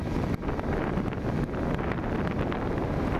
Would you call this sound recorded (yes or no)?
yes